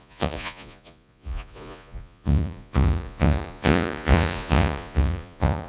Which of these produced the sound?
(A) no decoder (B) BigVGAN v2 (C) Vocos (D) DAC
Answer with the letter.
C